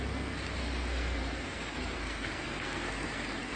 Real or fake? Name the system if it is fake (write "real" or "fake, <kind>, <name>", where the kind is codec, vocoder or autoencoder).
fake, codec, SNAC